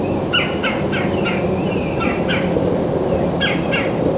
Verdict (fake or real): real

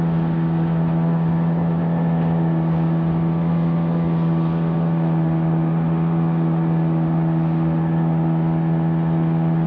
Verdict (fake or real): real